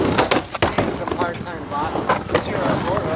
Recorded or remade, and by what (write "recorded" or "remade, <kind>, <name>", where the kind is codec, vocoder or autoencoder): recorded